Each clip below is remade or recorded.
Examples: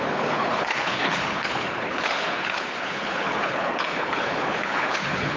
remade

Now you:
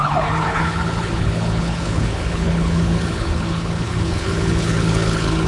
remade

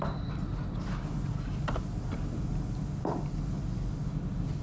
recorded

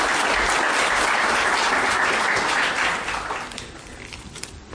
recorded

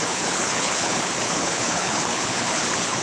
remade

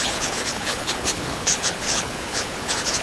remade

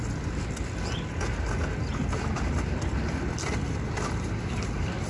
recorded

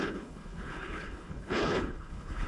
remade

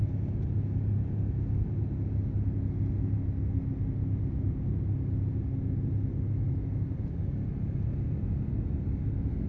recorded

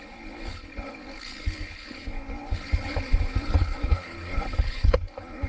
remade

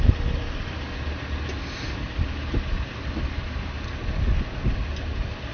recorded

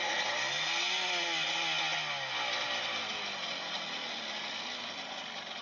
recorded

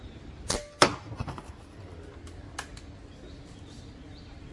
recorded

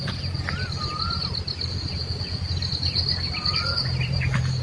recorded